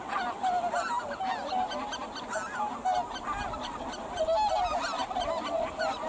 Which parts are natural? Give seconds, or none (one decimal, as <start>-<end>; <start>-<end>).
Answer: 0.0-6.1